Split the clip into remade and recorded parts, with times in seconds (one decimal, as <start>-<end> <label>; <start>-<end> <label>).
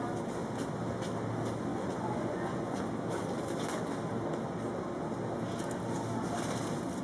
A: 0.0-1.7 recorded; 1.7-2.8 remade; 2.8-7.0 recorded